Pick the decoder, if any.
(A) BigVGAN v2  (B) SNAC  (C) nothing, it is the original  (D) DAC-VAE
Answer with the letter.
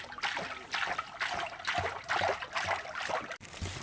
C